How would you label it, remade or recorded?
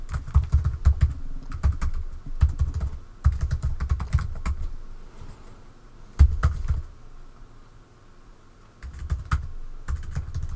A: recorded